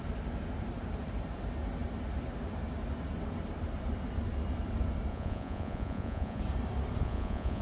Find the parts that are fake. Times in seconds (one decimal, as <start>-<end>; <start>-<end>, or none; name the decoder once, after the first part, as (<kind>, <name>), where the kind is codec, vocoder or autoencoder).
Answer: 5.1-6.4 (vocoder, Vocos); 7.0-7.6